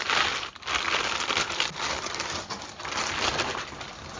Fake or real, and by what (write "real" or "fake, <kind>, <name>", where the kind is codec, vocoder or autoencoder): real